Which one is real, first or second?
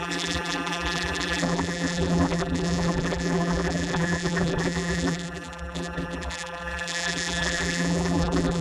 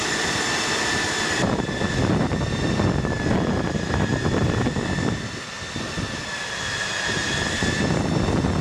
second